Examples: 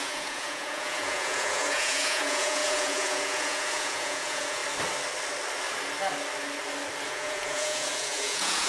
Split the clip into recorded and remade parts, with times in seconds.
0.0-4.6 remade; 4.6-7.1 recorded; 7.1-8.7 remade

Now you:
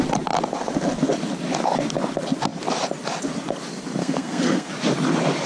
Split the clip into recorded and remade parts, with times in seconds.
0.0-4.0 recorded; 4.0-4.7 remade; 4.7-5.5 recorded

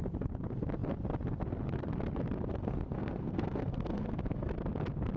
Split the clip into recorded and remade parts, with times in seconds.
0.0-2.5 recorded; 2.5-4.5 remade; 4.5-5.2 recorded

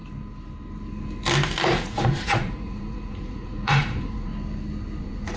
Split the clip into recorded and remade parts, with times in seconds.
0.0-1.7 recorded; 1.7-4.3 remade; 4.3-5.0 recorded; 5.0-5.4 remade

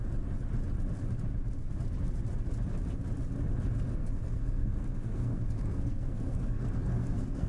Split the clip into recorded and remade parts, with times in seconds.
0.0-3.9 recorded; 3.9-7.5 remade

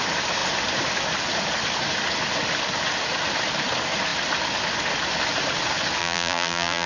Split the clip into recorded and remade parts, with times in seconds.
0.0-6.0 recorded; 6.0-6.9 remade

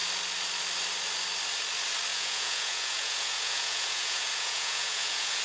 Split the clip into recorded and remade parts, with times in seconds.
0.0-2.1 recorded; 2.1-5.4 remade

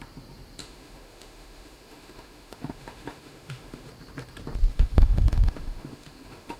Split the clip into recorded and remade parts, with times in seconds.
0.0-0.6 recorded; 0.6-3.9 remade; 3.9-4.7 recorded; 4.7-6.6 remade